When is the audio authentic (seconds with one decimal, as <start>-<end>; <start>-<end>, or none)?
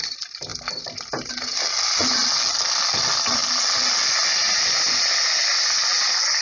0.0-6.4